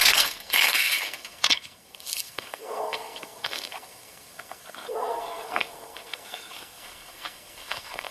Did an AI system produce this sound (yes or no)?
yes